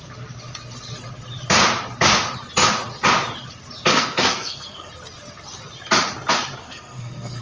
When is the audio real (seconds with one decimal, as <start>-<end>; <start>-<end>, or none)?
0.0-3.9; 4.9-6.6